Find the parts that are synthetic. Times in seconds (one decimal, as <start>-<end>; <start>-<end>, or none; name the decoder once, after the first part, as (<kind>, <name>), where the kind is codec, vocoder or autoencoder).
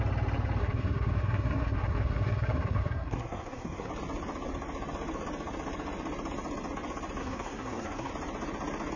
0.6-3.9 (codec, SNAC); 7.2-8.1